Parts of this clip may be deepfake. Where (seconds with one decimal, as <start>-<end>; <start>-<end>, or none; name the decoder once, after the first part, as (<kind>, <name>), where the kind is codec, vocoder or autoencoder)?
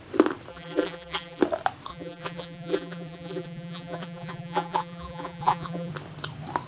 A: 0.5-1.4 (vocoder, BigVGAN v2); 1.9-5.9